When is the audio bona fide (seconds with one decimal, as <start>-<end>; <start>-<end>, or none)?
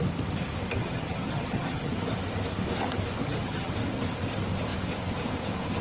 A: 0.0-0.8; 1.9-3.2; 3.7-5.8